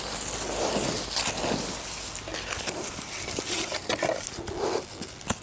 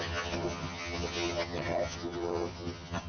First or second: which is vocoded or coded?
second